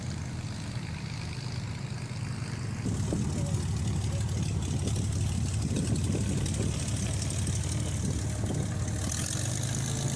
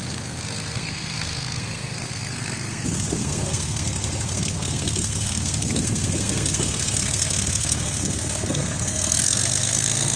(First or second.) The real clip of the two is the first